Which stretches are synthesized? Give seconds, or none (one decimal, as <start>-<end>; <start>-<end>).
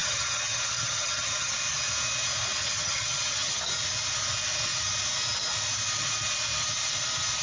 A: 0.0-1.5; 2.6-3.6